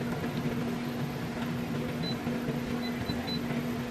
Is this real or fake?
real